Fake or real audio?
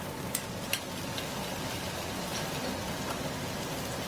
real